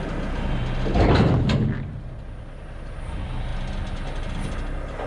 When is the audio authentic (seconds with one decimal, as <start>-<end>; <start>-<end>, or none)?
0.0-5.1